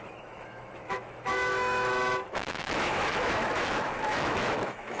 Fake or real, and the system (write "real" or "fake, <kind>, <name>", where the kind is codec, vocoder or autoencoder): fake, autoencoder, DAC-VAE